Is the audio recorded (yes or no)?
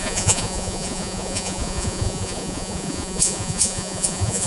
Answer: no